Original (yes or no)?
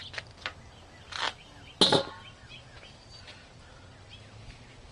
yes